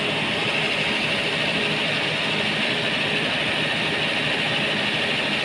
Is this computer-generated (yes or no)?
no